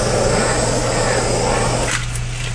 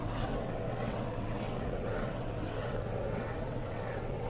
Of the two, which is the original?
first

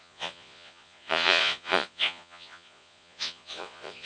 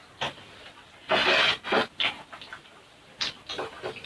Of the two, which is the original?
second